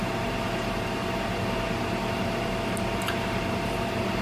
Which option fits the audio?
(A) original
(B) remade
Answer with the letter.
B